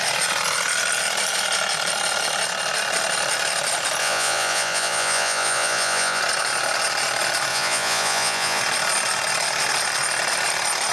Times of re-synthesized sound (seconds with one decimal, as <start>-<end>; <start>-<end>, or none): 4.0-6.2; 7.5-8.6